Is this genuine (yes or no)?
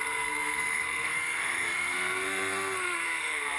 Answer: no